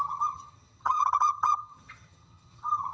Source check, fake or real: fake